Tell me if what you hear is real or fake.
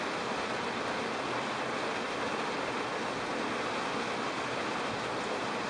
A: real